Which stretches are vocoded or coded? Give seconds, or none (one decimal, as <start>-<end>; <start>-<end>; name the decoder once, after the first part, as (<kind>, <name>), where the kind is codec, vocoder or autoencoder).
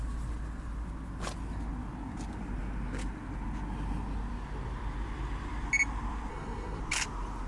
6.3-6.8 (codec, SNAC)